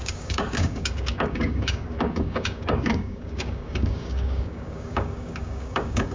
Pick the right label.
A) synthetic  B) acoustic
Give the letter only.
A